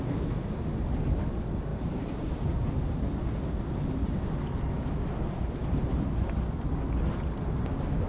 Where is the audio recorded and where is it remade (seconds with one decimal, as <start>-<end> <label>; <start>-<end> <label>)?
0.0-1.7 recorded; 1.7-2.4 remade; 2.4-5.6 recorded; 5.6-6.3 remade; 6.3-8.1 recorded